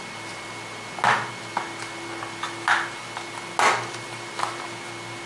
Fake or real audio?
real